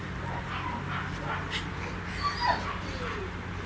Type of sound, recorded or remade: recorded